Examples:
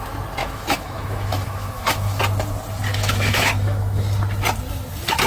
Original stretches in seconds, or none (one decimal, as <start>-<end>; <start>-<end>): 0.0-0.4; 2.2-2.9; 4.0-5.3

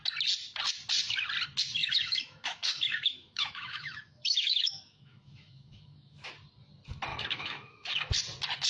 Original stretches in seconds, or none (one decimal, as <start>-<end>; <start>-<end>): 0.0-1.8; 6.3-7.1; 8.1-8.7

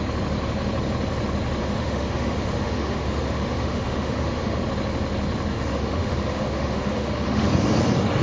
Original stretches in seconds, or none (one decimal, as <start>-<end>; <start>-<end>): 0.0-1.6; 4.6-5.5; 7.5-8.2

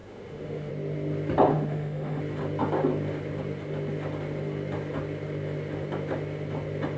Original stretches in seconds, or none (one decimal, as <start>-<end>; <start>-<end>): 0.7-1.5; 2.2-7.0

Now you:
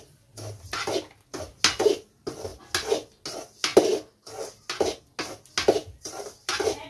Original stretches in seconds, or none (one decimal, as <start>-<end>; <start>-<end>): 0.0-6.9